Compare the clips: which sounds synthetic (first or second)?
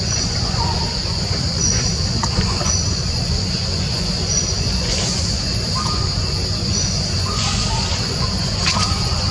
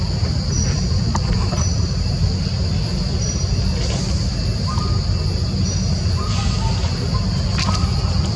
first